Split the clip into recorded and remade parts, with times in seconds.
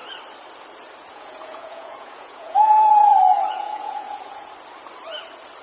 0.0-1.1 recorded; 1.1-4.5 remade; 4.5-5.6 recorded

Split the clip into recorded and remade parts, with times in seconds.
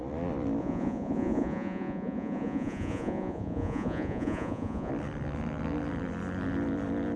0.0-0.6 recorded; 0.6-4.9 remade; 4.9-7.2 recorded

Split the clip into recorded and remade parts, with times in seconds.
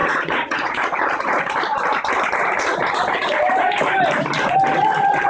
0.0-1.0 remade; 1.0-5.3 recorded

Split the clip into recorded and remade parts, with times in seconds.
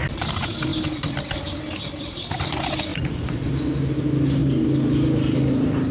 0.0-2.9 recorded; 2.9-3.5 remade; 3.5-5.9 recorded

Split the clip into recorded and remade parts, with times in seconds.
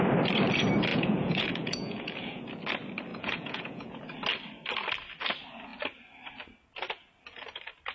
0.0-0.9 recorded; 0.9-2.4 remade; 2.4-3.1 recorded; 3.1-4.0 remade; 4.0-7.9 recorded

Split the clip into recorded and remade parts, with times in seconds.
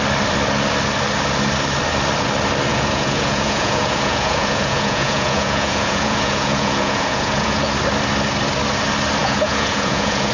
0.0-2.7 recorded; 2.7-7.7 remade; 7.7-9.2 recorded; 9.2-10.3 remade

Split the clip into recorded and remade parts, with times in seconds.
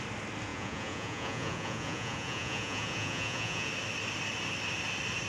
0.0-0.5 recorded; 0.5-3.7 remade; 3.7-5.3 recorded